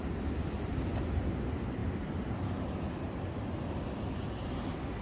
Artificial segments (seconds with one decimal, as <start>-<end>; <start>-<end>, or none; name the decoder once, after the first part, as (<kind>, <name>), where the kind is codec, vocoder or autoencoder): none